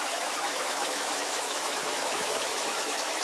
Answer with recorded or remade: remade